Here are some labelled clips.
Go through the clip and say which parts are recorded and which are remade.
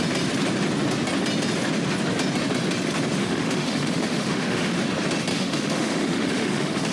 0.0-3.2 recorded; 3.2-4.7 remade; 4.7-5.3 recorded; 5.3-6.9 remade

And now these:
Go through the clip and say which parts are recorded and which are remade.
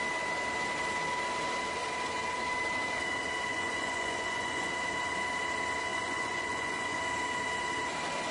0.0-3.5 recorded; 3.5-4.7 remade; 4.7-5.9 recorded; 5.9-7.0 remade; 7.0-8.3 recorded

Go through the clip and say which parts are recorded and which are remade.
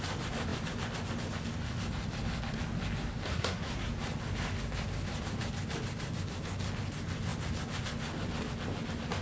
0.0-3.3 recorded; 3.3-3.9 remade; 3.9-9.2 recorded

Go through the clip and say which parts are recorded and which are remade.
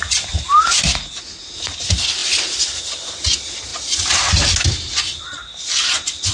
0.0-6.3 recorded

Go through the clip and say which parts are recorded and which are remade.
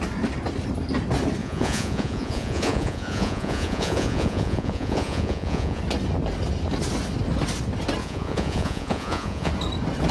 0.0-1.4 recorded; 1.4-5.8 remade; 5.8-8.0 recorded; 8.0-9.5 remade; 9.5-10.1 recorded